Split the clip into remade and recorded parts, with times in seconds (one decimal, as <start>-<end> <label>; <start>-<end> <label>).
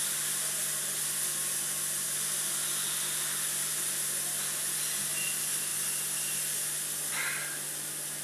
0.0-8.2 recorded